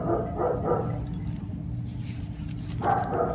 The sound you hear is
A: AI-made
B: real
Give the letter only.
B